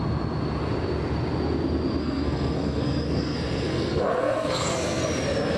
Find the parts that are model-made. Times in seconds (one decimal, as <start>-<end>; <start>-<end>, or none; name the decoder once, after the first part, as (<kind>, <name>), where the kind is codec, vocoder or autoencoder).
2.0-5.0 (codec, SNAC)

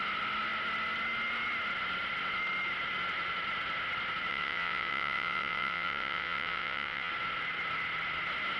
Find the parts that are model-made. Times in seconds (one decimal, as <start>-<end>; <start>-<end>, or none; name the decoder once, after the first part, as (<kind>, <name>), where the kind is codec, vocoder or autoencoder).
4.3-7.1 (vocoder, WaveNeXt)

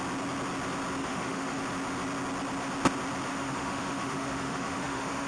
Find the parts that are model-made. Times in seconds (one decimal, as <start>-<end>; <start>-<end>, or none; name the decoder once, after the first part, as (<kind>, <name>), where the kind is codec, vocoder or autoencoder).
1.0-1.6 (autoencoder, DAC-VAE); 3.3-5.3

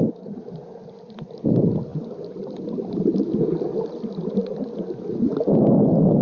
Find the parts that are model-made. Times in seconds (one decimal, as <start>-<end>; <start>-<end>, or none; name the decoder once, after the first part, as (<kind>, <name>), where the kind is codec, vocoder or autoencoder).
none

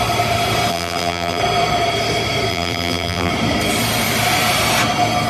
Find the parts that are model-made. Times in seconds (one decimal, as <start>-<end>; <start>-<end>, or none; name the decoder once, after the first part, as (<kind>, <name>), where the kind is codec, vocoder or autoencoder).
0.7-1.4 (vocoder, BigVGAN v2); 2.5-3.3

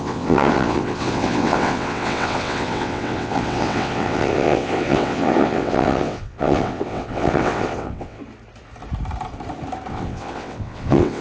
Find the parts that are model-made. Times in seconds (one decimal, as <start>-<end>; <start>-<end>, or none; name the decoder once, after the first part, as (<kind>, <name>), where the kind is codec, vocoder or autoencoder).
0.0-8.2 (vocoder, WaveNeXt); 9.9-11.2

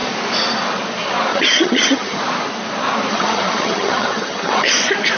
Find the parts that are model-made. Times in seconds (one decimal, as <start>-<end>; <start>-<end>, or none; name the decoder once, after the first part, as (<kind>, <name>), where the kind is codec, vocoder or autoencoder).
1.3-2.2 (vocoder, HiFi-GAN); 3.1-4.7

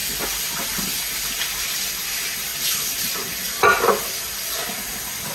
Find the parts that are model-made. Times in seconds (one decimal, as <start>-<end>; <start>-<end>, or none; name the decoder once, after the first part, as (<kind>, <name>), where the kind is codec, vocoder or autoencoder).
none